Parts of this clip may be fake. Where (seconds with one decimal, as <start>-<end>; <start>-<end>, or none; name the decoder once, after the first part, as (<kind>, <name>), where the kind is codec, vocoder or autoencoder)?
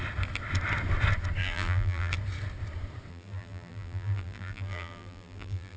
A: 1.4-2.1 (vocoder, BigVGAN v2); 3.1-5.8